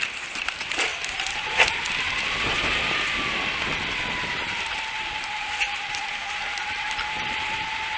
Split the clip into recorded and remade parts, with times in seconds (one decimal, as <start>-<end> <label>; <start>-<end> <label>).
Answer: 0.0-8.0 recorded